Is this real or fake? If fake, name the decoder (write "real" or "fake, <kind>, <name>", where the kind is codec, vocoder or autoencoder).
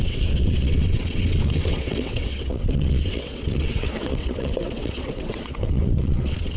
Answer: fake, vocoder, WaveNeXt